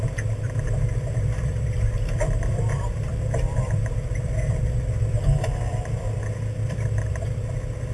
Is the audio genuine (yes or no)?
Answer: no